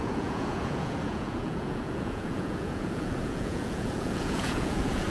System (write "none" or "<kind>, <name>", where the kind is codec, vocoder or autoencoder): vocoder, Vocos